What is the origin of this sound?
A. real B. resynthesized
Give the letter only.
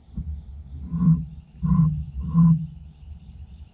A